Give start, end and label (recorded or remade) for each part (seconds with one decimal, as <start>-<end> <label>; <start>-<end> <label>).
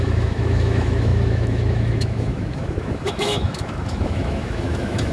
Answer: 0.0-5.1 remade